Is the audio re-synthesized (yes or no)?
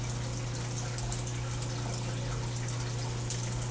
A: no